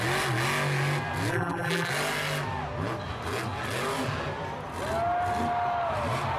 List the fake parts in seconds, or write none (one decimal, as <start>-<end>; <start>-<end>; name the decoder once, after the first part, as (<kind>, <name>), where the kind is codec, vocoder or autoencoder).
1.3-1.9 (vocoder, BigVGAN v2)